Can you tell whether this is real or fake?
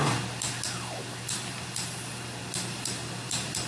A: real